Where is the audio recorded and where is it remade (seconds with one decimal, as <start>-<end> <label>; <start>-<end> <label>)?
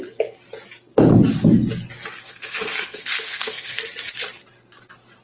0.0-2.2 recorded; 2.2-3.8 remade; 3.8-5.2 recorded